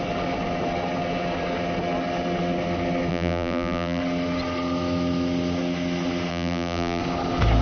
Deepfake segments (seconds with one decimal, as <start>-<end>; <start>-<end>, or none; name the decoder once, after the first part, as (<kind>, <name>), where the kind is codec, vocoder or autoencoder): 3.1-4.0 (vocoder, BigVGAN v2); 6.3-7.0